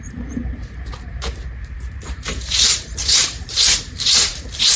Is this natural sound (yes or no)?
no